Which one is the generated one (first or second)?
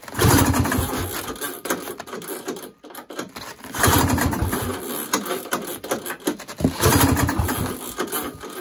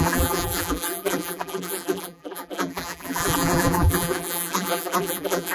second